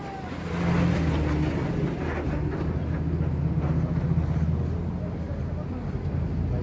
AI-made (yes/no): no